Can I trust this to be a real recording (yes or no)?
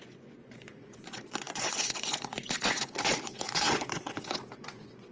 no